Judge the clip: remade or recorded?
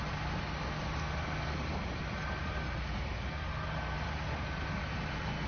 recorded